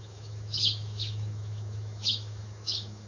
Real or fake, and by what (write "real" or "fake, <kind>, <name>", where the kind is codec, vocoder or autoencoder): fake, autoencoder, DAC-VAE